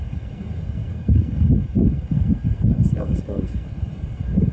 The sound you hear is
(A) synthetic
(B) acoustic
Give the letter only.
A